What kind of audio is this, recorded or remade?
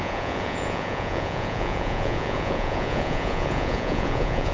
remade